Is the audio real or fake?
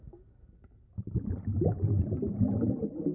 real